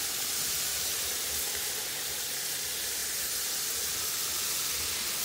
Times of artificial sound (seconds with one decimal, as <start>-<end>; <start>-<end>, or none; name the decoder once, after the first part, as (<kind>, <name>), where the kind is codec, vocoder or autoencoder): 0.7-1.3 (vocoder, BigVGAN v2)